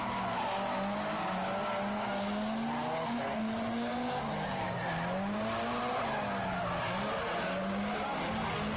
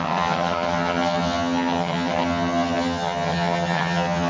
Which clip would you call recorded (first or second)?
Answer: first